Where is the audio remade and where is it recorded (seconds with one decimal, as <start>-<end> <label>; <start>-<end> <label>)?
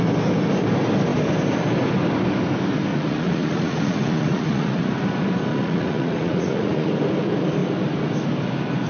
0.0-2.9 recorded; 2.9-4.9 remade; 4.9-5.5 recorded; 5.5-6.9 remade; 6.9-8.9 recorded